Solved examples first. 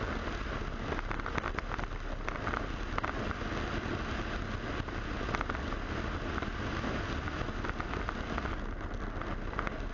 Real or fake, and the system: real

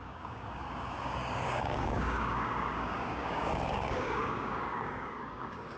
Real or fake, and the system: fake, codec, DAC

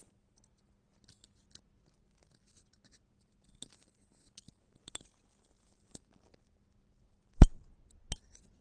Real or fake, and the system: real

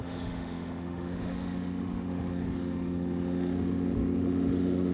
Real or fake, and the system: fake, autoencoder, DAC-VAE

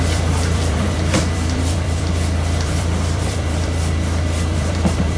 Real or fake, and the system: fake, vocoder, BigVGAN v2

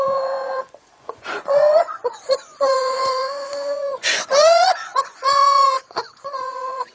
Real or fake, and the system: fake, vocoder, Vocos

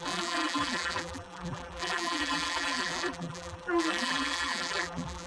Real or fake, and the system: fake, vocoder, BigVGAN v2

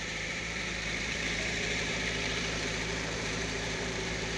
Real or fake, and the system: fake, vocoder, BigVGAN v2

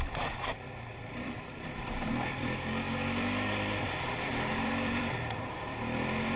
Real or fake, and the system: fake, vocoder, BigVGAN v2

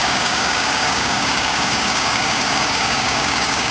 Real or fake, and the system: fake, codec, DAC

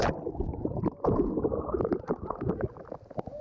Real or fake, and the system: real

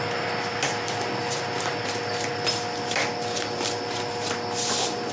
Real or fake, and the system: real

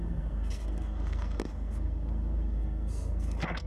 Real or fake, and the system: fake, codec, SNAC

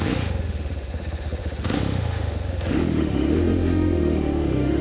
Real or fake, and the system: fake, autoencoder, DAC-VAE